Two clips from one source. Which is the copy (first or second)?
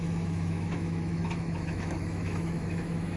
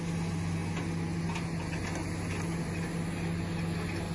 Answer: first